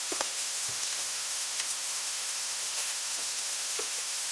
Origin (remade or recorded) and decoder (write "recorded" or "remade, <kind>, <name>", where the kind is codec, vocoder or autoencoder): remade, autoencoder, DAC-VAE